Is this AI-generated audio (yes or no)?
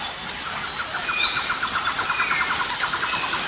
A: no